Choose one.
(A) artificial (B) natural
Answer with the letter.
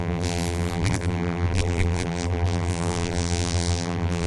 A